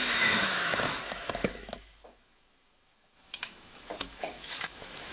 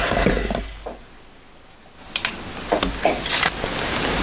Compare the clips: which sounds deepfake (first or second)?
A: first